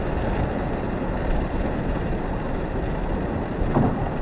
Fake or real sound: real